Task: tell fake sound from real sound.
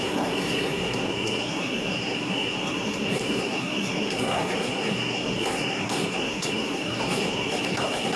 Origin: fake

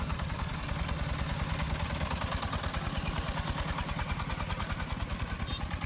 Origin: real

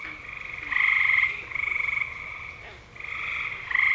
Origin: real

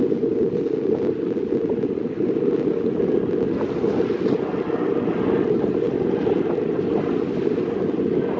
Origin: real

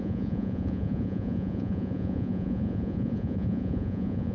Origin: fake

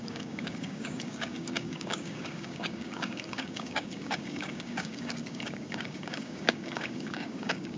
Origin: fake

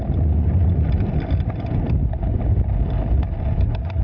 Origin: real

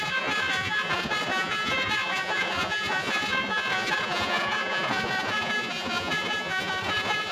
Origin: fake